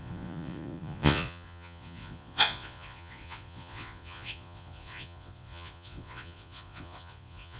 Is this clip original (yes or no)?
no